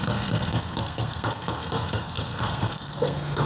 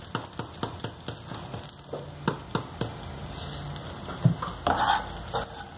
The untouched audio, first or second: second